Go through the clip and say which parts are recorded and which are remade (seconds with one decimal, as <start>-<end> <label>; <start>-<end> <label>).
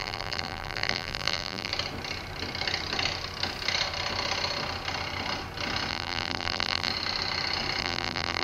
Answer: 0.0-1.7 remade; 1.7-5.9 recorded; 5.9-6.9 remade; 6.9-7.8 recorded; 7.8-8.4 remade